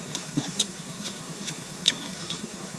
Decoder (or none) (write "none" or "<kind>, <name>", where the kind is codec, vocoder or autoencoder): codec, SNAC